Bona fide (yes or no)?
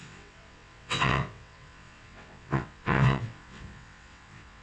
no